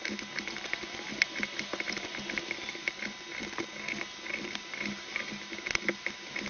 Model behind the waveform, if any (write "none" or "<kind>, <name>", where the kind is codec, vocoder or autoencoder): none